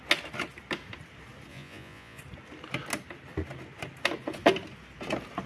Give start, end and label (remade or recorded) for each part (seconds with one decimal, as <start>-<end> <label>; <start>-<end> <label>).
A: 0.0-1.5 recorded; 1.5-2.2 remade; 2.2-5.5 recorded